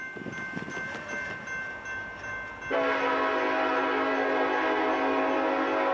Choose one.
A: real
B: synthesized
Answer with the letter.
A